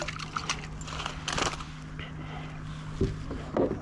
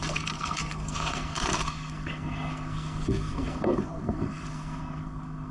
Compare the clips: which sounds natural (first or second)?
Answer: first